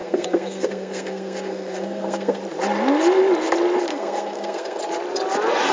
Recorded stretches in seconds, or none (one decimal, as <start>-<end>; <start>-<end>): 2.4-3.9; 4.8-5.7